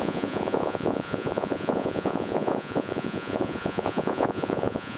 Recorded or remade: remade